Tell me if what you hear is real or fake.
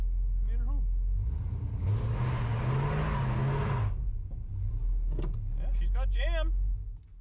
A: real